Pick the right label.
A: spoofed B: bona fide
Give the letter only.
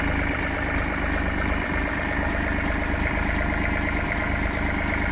B